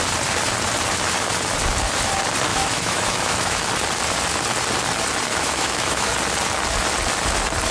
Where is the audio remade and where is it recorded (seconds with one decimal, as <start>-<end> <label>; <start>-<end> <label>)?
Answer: 0.0-2.5 recorded; 2.5-3.7 remade; 3.7-5.3 recorded; 5.3-6.1 remade; 6.1-7.7 recorded